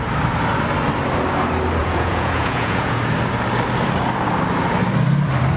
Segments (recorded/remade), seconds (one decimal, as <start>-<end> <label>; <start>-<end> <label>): 0.0-1.8 recorded; 1.8-3.0 remade; 3.0-5.6 recorded